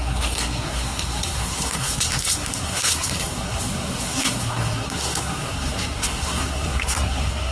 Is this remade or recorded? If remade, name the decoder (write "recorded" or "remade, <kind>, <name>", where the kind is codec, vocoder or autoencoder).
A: remade, codec, SNAC